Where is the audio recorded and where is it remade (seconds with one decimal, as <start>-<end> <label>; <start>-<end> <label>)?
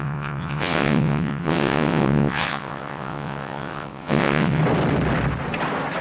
0.0-4.6 remade; 4.6-6.0 recorded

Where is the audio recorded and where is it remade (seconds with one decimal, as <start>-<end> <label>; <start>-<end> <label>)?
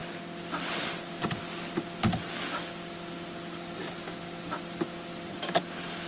0.0-6.1 recorded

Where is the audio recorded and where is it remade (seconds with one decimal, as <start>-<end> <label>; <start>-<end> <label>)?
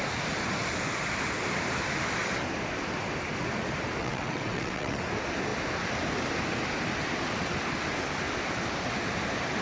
0.0-4.0 recorded; 4.0-5.0 remade; 5.0-9.6 recorded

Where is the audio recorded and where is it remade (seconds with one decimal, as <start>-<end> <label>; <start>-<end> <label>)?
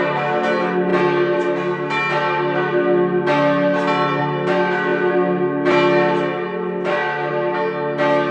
0.0-8.3 recorded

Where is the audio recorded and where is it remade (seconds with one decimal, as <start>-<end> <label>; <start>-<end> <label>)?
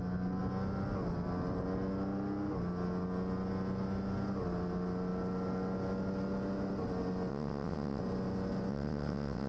0.0-7.3 recorded; 7.3-8.0 remade; 8.0-8.7 recorded; 8.7-9.5 remade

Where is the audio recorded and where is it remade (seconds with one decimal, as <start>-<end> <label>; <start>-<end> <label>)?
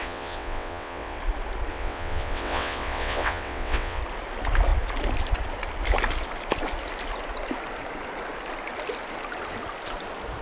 0.0-1.2 remade; 1.2-1.7 recorded; 1.7-4.0 remade; 4.0-10.4 recorded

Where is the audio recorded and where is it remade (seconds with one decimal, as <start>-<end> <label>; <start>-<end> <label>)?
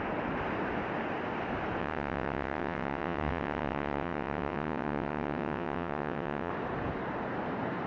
0.0-1.8 recorded; 1.8-6.5 remade; 6.5-7.9 recorded